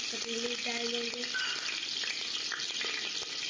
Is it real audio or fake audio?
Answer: real